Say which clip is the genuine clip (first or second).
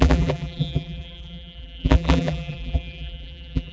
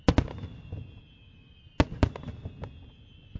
second